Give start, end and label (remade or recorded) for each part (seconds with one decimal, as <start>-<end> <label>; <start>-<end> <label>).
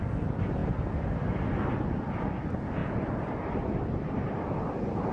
0.0-5.1 recorded